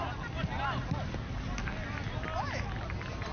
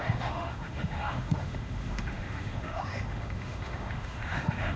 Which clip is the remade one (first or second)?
second